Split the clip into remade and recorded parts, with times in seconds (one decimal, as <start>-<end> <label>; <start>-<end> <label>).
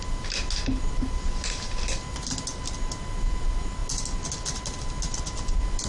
0.0-5.9 recorded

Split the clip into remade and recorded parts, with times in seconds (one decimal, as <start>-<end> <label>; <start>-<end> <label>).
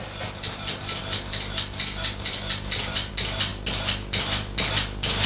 0.0-5.3 recorded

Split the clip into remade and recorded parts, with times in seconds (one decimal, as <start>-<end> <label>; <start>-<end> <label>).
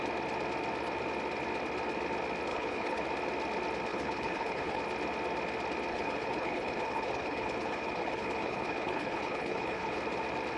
0.0-2.5 recorded; 2.5-3.0 remade; 3.0-3.9 recorded; 3.9-4.8 remade; 4.8-5.9 recorded; 5.9-10.0 remade; 10.0-10.6 recorded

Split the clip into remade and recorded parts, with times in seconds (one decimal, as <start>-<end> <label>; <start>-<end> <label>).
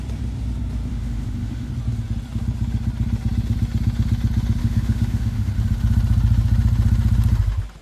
0.0-0.9 recorded; 0.9-1.7 remade; 1.7-4.6 recorded; 4.6-5.5 remade; 5.5-7.8 recorded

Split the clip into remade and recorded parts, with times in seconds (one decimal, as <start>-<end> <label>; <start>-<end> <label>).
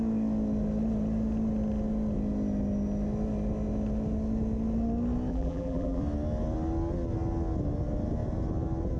0.0-5.3 recorded; 5.3-6.0 remade; 6.0-9.0 recorded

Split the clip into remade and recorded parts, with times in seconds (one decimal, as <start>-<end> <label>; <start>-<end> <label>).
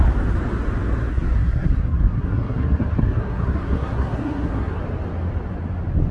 0.0-1.1 recorded; 1.1-4.8 remade; 4.8-6.1 recorded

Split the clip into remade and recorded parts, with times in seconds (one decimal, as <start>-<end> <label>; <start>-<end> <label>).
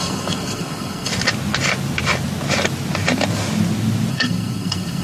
0.0-1.1 remade; 1.1-4.1 recorded; 4.1-5.0 remade